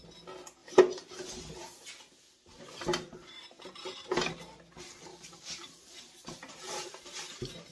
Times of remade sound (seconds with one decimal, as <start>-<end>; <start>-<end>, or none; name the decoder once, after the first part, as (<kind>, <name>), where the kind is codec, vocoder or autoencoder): 5.1-7.0 (vocoder, BigVGAN v2)